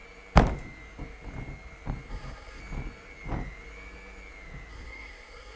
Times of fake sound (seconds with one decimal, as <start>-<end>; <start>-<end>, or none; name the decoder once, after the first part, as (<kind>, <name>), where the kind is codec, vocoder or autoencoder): 2.1-2.6 (codec, SNAC); 4.7-5.6